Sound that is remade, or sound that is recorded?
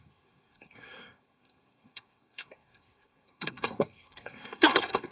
remade